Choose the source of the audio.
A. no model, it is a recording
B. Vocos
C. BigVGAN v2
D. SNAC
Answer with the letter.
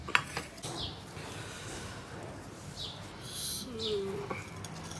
A